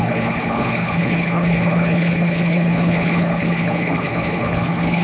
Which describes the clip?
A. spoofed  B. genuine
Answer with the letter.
A